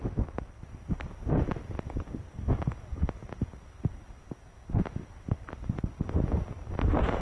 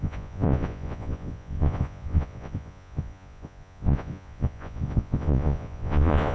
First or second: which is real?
first